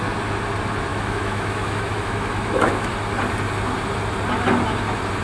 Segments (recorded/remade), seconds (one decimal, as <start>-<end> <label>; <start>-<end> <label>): 0.0-0.9 recorded; 0.9-2.9 remade; 2.9-5.2 recorded